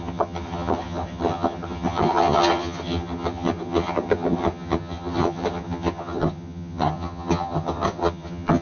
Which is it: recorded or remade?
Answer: remade